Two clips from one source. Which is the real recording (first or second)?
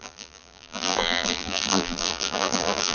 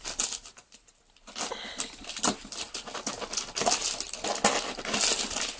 second